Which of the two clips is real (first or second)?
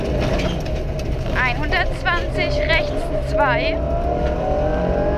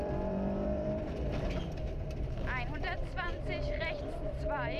first